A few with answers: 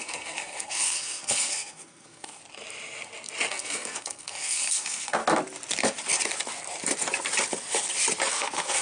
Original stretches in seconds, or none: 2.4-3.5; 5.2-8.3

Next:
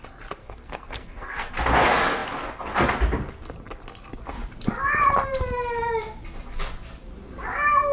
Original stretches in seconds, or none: 0.0-0.4; 1.5-7.9

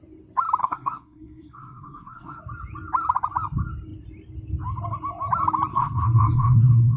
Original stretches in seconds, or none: 0.0-0.6; 2.4-5.7